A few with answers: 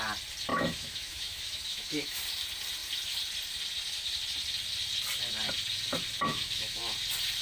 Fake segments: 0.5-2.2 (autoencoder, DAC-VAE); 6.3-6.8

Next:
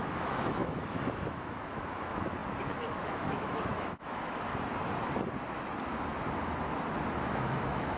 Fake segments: 0.0-4.5 (autoencoder, DAC-VAE); 7.2-8.0

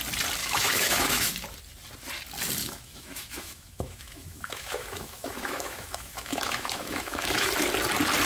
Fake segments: 0.4-1.3 (autoencoder, DAC-VAE); 2.6-7.5

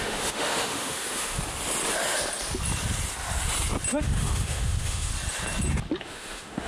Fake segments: 0.0-1.4 (autoencoder, DAC-VAE); 4.0-5.1; 6.0-6.7

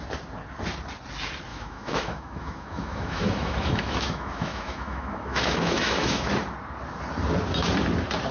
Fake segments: 1.5-6.3 (autoencoder, DAC-VAE)

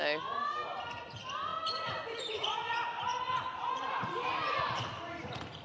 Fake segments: none

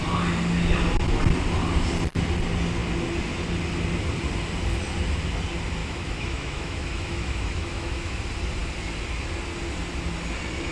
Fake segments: 5.8-8.2 (autoencoder, DAC-VAE)

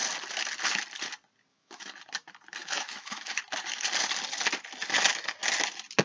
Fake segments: 1.5-2.0 (autoencoder, DAC-VAE); 2.6-3.4